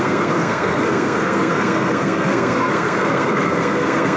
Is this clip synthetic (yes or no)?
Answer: yes